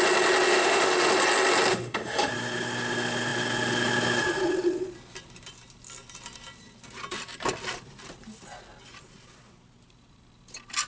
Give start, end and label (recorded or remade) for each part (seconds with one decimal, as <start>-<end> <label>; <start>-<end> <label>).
0.0-0.5 recorded; 0.5-1.1 remade; 1.1-1.7 recorded; 1.7-2.3 remade; 2.3-10.9 recorded